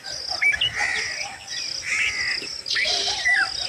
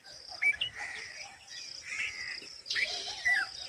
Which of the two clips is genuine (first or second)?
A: first